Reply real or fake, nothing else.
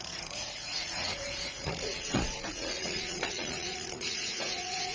fake